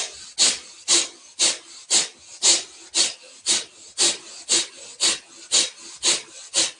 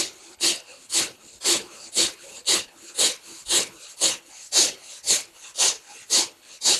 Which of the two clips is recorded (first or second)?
first